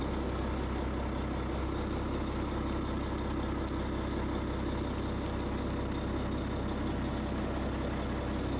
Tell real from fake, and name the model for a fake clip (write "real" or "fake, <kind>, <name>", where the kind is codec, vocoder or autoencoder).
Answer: real